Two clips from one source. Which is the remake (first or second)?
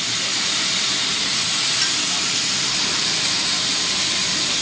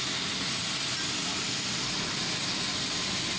first